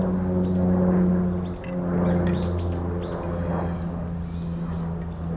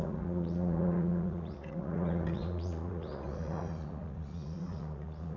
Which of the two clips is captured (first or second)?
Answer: first